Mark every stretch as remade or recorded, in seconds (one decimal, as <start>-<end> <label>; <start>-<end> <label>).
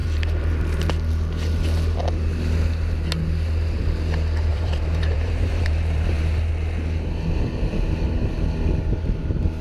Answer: 0.0-0.9 remade; 0.9-4.5 recorded; 4.5-6.5 remade; 6.5-9.6 recorded